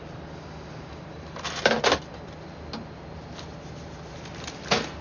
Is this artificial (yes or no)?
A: no